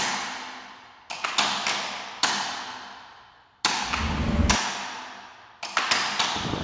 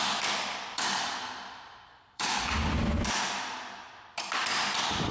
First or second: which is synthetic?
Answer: second